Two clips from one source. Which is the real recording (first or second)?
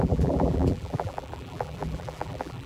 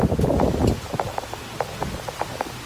second